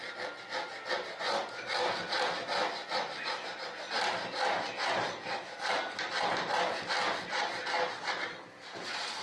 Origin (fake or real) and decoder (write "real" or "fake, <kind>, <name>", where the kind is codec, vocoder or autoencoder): real